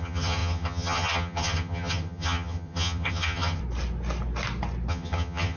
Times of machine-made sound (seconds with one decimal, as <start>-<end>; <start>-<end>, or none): 0.0-3.6; 4.9-5.6